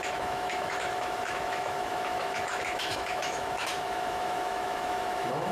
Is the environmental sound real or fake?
fake